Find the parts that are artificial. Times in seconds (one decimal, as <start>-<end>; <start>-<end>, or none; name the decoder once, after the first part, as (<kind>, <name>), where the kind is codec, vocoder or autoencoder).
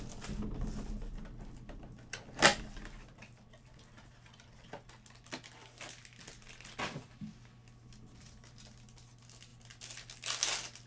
none